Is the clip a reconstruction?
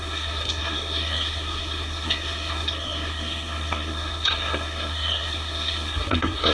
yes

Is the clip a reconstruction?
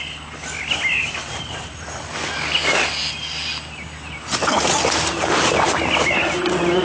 no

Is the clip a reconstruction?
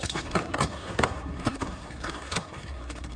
yes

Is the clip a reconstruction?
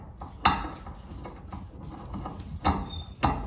no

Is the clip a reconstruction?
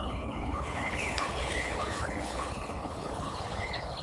yes